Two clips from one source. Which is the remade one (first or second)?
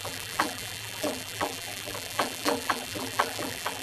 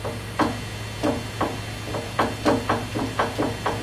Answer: first